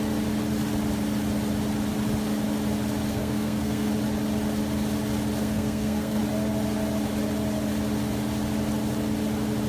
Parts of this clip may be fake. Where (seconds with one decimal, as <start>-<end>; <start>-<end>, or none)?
3.1-3.9; 5.4-6.2